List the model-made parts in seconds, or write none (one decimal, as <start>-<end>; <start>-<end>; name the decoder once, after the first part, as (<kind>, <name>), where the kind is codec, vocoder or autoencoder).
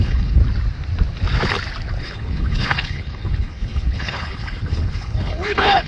0.0-0.4 (codec, HILCodec); 2.0-5.9